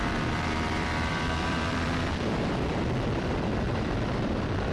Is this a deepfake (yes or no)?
yes